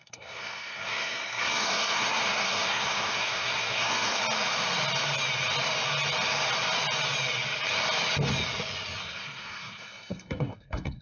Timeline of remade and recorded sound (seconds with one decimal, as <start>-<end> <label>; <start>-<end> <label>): 0.0-4.2 remade; 4.2-9.0 recorded; 9.0-11.0 remade